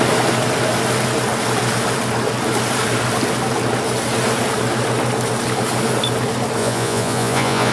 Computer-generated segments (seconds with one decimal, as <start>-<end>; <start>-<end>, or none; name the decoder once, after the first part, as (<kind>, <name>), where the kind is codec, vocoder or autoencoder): 6.6-7.7 (vocoder, Vocos)